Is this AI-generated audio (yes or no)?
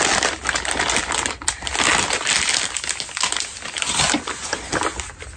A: no